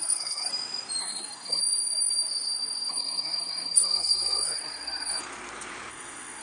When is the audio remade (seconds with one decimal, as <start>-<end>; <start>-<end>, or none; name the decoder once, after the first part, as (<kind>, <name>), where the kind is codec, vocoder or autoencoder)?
0.0-0.5 (codec, SNAC); 1.0-1.6; 2.9-5.2; 5.9-6.4